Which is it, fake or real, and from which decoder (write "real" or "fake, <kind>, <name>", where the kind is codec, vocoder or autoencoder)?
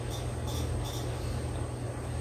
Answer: real